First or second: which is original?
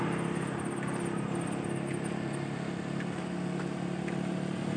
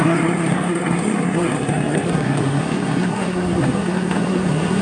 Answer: first